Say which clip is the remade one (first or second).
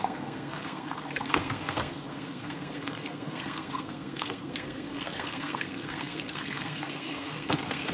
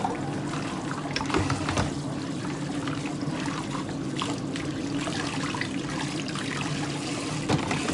first